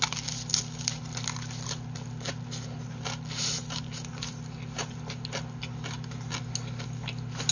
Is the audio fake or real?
real